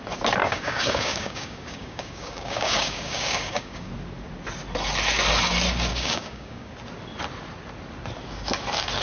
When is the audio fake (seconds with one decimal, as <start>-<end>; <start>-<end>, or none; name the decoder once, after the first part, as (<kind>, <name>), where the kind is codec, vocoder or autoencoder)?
0.4-3.9 (codec, DAC); 5.9-6.7

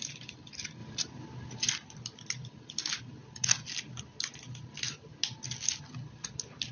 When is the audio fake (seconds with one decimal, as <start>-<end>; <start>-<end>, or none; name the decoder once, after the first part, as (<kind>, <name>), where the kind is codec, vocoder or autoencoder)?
none